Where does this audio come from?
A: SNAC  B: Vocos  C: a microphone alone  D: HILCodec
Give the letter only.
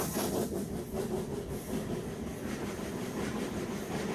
C